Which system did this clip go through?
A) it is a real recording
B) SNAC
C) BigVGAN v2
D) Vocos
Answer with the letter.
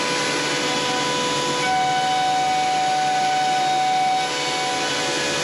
A